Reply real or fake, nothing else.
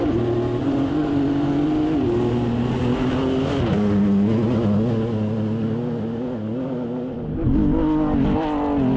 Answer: real